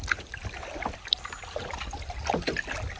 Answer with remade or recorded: recorded